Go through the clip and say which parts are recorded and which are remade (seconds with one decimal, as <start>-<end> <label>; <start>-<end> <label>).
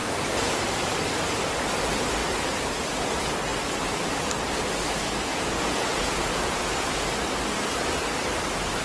0.0-5.3 recorded; 5.3-6.9 remade; 6.9-8.8 recorded